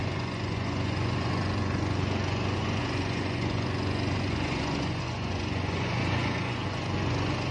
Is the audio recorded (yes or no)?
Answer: no